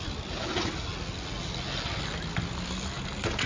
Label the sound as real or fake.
real